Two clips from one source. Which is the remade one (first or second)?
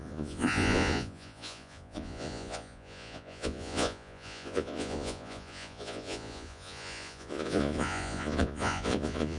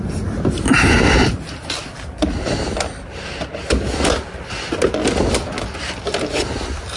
first